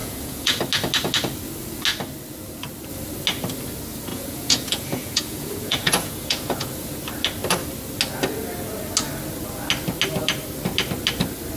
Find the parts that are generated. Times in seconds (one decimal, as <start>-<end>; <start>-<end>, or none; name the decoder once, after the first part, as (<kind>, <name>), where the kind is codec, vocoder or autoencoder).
0.0-0.6 (vocoder, Vocos); 4.1-7.0